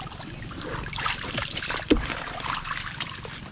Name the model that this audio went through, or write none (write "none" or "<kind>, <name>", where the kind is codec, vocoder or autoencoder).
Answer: none